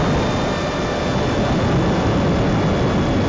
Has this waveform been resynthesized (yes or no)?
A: no